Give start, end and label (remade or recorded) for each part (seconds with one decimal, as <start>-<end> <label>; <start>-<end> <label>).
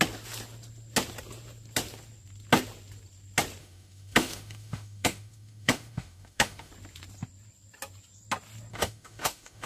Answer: 0.0-3.6 recorded; 3.6-6.7 remade; 6.7-8.7 recorded; 8.7-9.7 remade